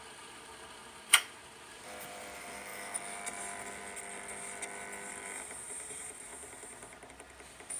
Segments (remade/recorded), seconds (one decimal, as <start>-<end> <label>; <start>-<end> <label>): 0.0-2.7 remade; 2.7-5.1 recorded; 5.1-6.3 remade; 6.3-7.1 recorded; 7.1-7.8 remade

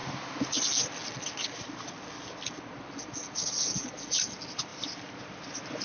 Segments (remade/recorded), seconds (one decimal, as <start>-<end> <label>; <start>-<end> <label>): 0.0-4.7 recorded; 4.7-5.2 remade; 5.2-5.8 recorded